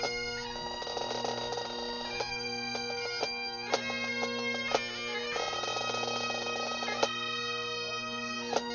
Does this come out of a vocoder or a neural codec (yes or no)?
no